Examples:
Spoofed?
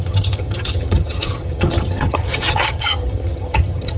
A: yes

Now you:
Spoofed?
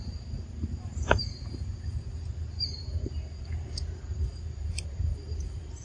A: yes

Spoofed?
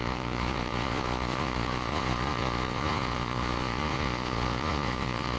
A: yes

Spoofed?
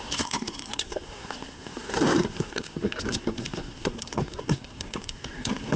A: yes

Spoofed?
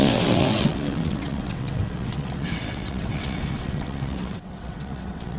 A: yes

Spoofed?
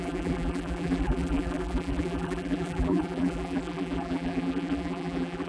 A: yes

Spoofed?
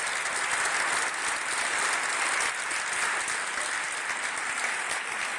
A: no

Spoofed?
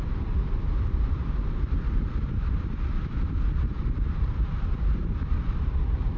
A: no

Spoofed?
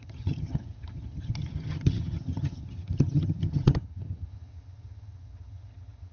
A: yes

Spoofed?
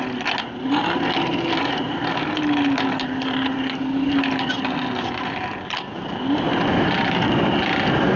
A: no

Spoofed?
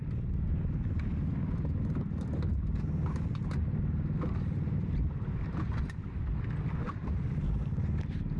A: no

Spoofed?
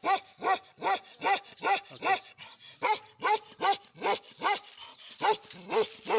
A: no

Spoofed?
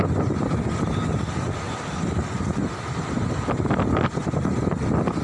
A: no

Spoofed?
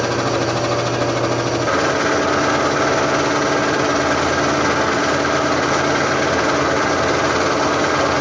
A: no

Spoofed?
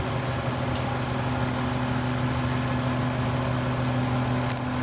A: no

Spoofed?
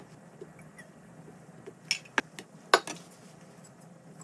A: no